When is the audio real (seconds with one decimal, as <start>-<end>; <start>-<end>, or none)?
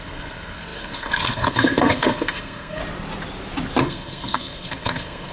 2.8-3.8